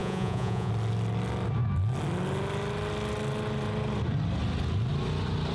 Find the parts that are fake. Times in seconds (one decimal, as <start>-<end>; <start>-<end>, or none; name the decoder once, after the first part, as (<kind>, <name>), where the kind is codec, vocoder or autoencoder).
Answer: 0.0-0.7 (vocoder, Vocos)